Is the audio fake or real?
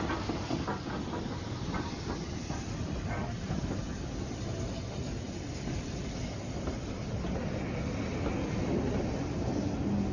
real